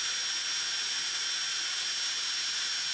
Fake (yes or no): no